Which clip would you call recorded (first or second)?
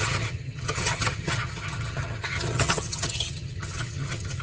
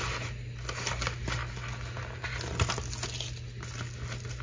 second